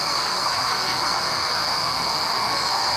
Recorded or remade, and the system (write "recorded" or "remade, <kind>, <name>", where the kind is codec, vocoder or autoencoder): remade, codec, SNAC